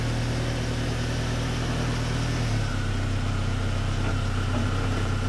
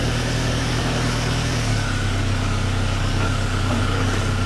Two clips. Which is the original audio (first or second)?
first